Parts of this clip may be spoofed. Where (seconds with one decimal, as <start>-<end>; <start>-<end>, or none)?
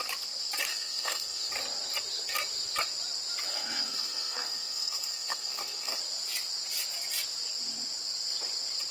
0.7-1.5; 3.5-6.0